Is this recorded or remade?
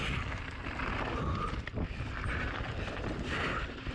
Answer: recorded